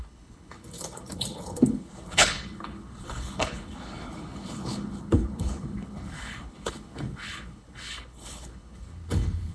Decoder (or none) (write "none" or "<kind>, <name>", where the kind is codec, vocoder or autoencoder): codec, HILCodec